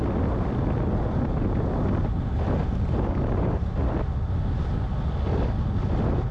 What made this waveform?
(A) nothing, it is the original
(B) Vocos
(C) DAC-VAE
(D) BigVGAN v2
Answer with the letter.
A